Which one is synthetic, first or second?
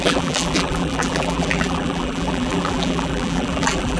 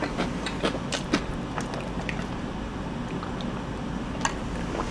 first